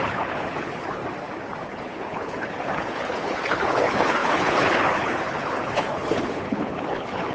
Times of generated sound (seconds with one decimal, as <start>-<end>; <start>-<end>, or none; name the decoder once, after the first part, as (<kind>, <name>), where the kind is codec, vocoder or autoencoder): 0.0-1.0 (codec, HILCodec); 1.6-7.3